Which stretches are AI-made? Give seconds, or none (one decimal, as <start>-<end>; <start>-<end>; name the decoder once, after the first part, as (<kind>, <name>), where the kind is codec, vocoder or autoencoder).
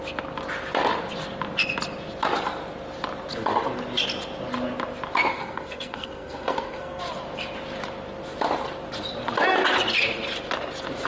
5.3-7.0 (codec, SNAC)